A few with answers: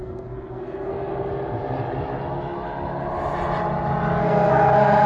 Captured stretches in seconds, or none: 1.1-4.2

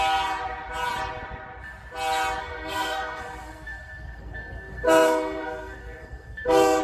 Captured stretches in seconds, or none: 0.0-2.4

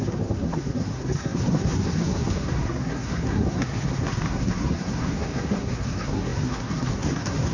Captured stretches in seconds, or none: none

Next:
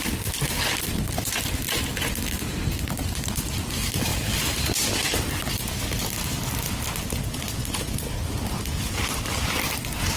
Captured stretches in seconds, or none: 0.0-10.2

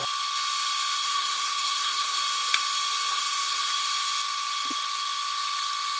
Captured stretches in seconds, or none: 0.0-1.0; 2.2-3.1; 3.7-6.0

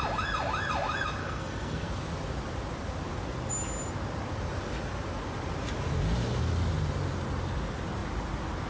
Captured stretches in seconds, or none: 0.0-1.2; 1.9-8.7

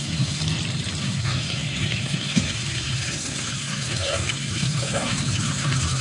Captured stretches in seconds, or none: 0.4-1.0

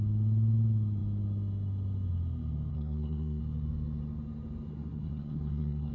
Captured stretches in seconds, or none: 0.0-2.7; 3.4-4.7